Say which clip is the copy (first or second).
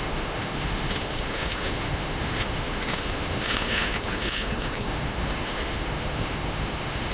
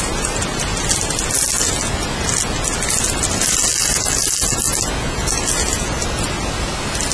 first